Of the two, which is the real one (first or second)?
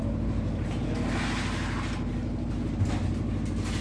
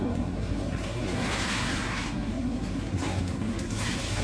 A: first